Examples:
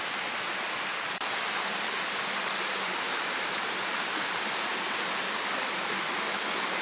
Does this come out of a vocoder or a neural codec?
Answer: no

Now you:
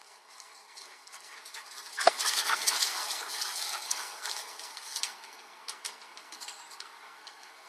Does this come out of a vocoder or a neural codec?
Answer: yes